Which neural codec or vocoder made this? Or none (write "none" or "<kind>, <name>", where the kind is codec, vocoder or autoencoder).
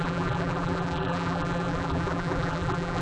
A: vocoder, BigVGAN v2